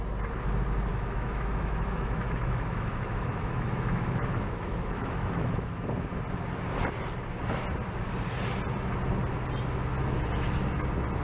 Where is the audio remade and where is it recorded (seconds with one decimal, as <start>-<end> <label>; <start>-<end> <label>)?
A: 0.0-0.9 recorded; 0.9-5.8 remade; 5.8-11.2 recorded